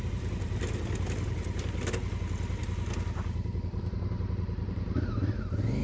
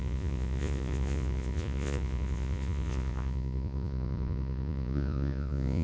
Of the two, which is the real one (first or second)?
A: first